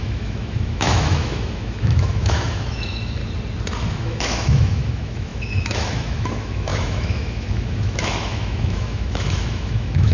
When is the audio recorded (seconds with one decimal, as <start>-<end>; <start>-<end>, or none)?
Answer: 3.2-3.9